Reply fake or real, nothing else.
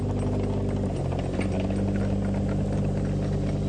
real